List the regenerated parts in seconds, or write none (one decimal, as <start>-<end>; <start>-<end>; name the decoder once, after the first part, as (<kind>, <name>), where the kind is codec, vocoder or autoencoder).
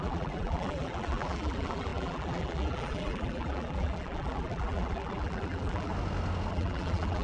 0.0-5.9 (vocoder, BigVGAN v2); 6.5-7.2